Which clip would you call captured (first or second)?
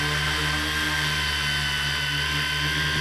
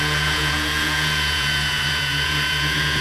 first